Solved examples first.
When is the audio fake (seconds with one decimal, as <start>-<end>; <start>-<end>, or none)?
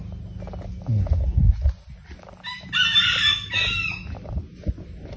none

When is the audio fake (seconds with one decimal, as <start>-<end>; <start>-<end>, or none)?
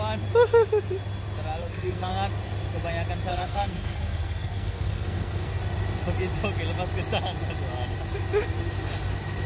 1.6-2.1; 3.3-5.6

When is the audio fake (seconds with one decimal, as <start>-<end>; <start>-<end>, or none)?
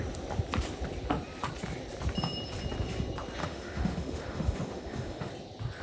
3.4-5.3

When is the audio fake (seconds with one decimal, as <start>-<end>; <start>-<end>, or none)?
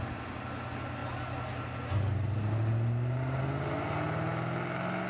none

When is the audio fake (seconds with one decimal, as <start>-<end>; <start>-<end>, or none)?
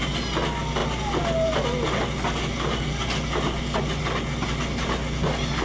none